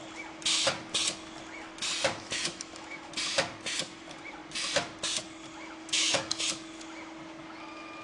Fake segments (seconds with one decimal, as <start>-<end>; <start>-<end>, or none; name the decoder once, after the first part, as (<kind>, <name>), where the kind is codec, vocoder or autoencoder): 2.0-3.1 (autoencoder, DAC-VAE); 5.8-6.4